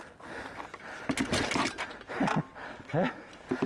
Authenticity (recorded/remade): recorded